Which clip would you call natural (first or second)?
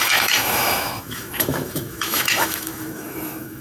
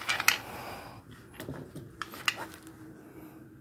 second